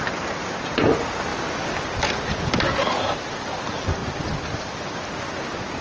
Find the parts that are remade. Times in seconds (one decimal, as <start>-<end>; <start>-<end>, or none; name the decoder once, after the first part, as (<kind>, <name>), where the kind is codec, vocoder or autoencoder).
none